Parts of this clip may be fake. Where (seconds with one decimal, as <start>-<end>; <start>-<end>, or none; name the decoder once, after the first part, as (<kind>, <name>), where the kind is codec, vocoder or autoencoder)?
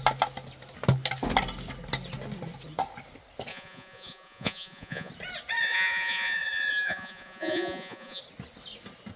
3.5-5.1 (vocoder, Vocos); 5.6-8.2